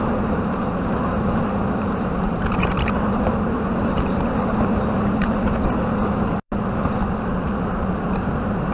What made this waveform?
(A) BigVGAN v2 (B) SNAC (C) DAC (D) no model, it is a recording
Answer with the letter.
A